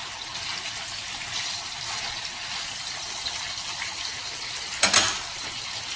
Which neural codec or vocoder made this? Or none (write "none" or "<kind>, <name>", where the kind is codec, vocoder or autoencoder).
none